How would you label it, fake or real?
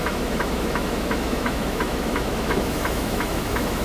fake